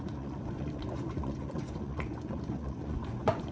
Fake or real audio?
fake